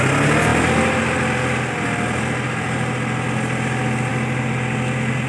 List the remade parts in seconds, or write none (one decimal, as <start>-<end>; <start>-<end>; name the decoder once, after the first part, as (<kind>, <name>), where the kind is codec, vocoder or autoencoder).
none